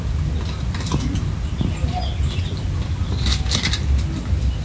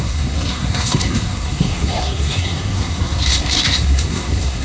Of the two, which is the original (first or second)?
first